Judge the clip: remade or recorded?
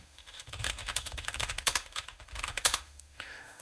remade